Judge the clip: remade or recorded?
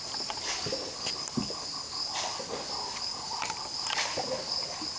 recorded